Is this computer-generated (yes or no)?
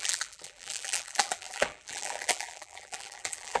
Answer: yes